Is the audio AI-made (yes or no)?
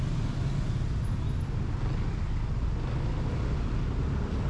no